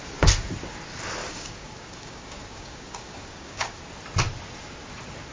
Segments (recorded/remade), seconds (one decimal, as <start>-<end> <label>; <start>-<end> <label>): 0.0-1.2 recorded; 1.2-3.8 remade; 3.8-5.3 recorded